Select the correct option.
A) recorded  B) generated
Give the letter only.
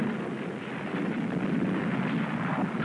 A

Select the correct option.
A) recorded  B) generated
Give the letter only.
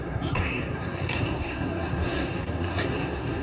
B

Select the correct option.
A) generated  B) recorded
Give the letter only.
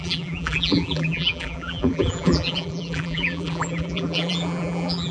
A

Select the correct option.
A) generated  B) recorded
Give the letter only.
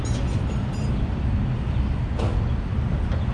B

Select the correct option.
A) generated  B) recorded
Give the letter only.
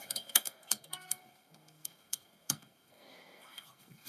A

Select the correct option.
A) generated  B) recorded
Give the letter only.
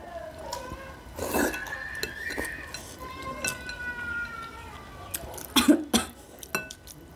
B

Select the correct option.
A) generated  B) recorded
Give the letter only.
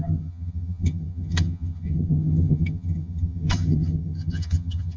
A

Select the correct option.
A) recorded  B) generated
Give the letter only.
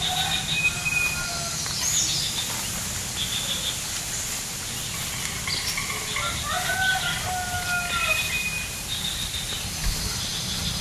A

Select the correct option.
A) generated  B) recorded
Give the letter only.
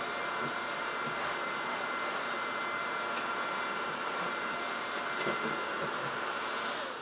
A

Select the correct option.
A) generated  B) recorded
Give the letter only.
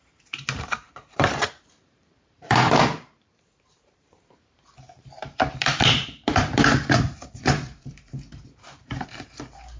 A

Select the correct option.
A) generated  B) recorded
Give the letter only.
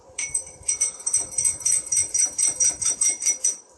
A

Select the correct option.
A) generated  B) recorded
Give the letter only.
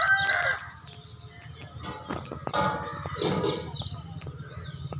B